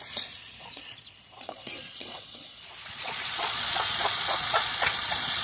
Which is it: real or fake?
fake